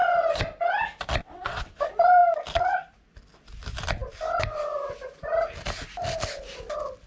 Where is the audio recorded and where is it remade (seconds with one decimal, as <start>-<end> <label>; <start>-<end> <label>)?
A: 0.0-1.2 recorded; 1.2-1.8 remade; 1.8-7.1 recorded

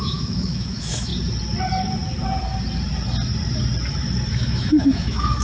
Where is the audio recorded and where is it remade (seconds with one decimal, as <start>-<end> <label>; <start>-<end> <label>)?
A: 0.0-1.1 remade; 1.1-4.3 recorded; 4.3-5.4 remade

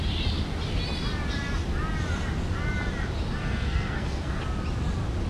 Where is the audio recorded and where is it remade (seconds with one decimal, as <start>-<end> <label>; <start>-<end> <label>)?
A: 0.0-3.4 recorded; 3.4-4.4 remade; 4.4-5.3 recorded

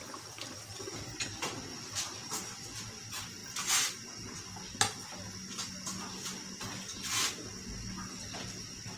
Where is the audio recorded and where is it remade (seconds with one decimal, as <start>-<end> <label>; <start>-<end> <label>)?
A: 0.0-9.0 recorded

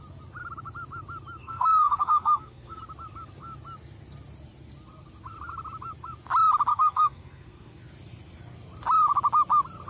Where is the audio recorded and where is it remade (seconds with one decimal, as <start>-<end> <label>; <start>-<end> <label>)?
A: 0.0-1.4 recorded; 1.4-2.8 remade; 2.8-6.7 recorded; 6.7-7.8 remade; 7.8-9.9 recorded